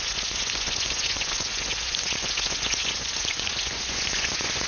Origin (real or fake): fake